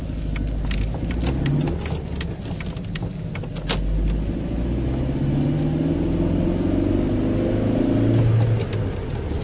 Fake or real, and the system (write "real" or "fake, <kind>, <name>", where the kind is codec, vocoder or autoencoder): real